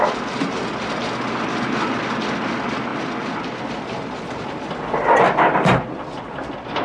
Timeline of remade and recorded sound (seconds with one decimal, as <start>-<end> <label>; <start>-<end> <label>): 0.0-6.8 recorded